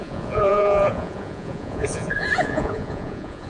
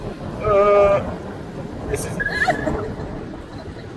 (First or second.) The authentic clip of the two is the second